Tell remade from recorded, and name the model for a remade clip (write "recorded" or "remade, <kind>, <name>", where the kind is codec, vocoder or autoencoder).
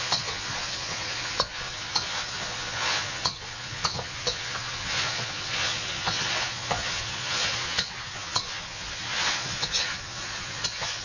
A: remade, vocoder, Vocos